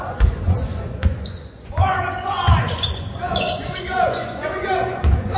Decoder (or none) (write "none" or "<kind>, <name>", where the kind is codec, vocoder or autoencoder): vocoder, Vocos